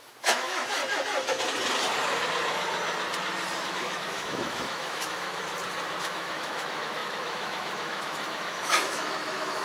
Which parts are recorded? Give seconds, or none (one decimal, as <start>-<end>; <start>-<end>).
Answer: 0.8-3.7; 5.4-6.0